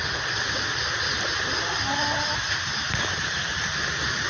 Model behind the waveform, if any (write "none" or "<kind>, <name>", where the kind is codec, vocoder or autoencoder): none